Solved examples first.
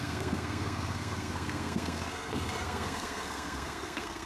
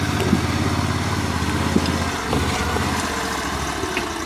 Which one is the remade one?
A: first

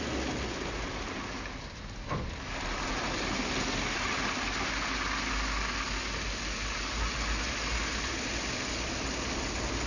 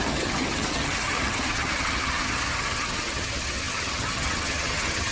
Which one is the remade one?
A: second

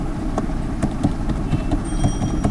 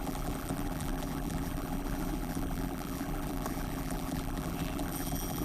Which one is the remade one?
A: second